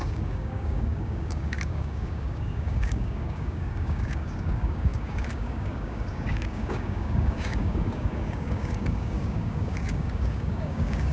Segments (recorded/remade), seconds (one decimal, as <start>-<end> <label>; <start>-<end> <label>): 0.0-11.1 remade